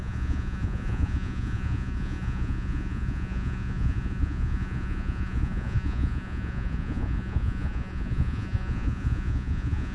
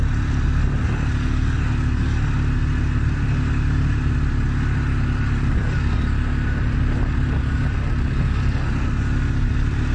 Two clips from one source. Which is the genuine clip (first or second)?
second